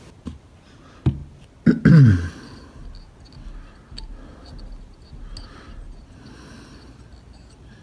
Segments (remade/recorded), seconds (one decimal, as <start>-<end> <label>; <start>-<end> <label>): 0.0-7.8 recorded